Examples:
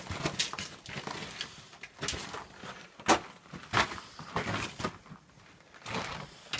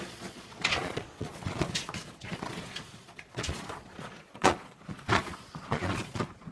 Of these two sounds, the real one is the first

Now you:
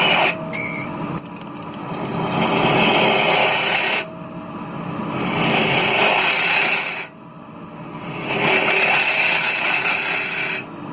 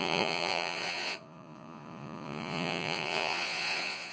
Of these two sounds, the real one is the first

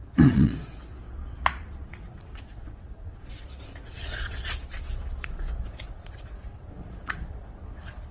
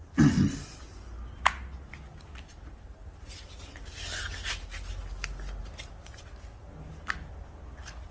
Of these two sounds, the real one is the second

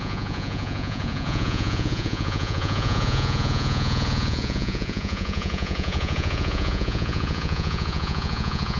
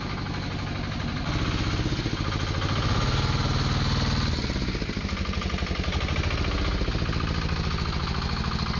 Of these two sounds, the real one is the second